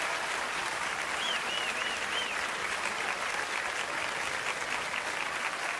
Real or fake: real